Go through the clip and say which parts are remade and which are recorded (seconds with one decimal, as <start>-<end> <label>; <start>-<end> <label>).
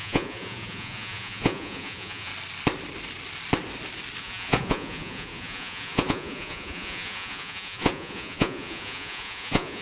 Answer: 0.0-2.3 remade; 2.3-4.2 recorded; 4.2-9.8 remade